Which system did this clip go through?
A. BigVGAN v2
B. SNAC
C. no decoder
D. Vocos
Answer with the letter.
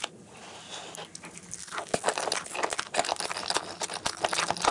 C